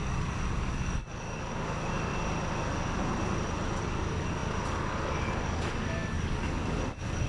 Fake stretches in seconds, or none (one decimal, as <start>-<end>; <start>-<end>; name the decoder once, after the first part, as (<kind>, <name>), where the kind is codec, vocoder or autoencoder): 0.0-2.1 (codec, DAC); 3.8-7.3